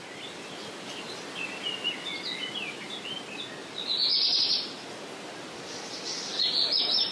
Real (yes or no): yes